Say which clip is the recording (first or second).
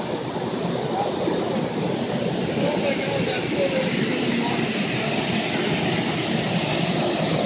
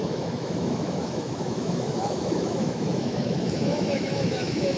first